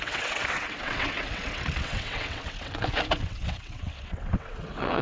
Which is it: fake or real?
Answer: fake